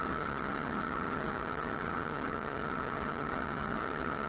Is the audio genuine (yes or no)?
no